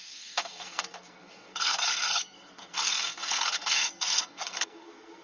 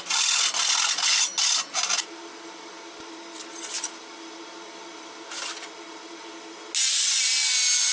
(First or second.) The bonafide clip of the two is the second